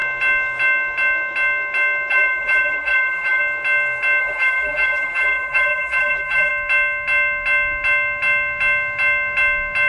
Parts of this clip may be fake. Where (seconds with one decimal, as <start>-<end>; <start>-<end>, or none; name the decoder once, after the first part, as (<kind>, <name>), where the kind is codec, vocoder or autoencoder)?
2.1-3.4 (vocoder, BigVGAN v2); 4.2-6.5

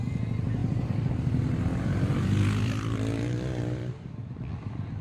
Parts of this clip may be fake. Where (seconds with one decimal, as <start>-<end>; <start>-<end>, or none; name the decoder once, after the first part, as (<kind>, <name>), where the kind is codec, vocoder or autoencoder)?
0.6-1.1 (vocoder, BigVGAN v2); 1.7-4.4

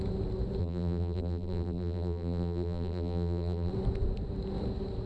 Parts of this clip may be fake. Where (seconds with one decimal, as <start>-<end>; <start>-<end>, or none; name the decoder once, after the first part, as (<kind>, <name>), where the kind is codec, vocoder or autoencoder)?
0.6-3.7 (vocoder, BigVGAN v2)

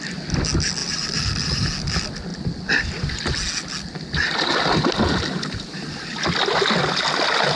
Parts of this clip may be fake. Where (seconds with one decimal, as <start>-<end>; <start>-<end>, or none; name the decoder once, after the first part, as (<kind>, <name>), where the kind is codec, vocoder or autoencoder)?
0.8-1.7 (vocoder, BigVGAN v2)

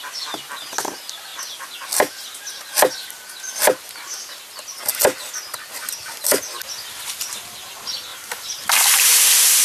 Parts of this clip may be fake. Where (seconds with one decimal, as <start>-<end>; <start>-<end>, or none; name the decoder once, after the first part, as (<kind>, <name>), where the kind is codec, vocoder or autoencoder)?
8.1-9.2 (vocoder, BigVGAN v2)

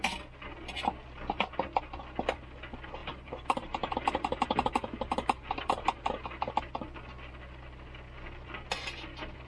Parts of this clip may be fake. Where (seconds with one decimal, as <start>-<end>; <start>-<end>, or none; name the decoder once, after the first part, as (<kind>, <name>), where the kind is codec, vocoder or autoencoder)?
3.0-6.5 (vocoder, BigVGAN v2)

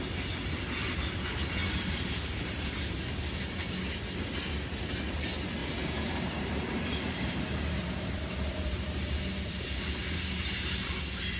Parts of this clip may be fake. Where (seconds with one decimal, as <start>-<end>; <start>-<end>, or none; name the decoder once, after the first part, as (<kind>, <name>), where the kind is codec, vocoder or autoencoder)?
1.6-3.0 (vocoder, BigVGAN v2); 5.6-9.5; 10.0-10.9